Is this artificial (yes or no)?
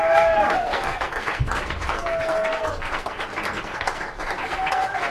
yes